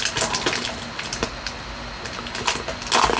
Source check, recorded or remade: recorded